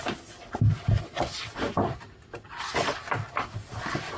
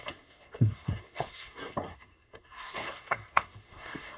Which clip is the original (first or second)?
first